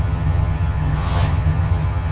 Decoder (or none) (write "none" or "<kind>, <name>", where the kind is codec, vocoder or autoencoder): vocoder, HiFi-GAN